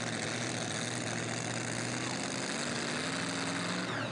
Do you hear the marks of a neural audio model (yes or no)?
no